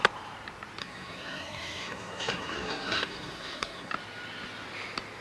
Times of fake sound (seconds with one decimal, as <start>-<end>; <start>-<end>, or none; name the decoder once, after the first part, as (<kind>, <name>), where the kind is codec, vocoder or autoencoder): 0.8-3.9 (codec, SNAC)